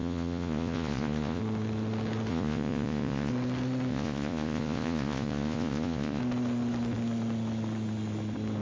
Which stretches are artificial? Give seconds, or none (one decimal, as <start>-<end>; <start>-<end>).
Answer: 0.0-1.4; 2.3-3.3; 3.9-6.2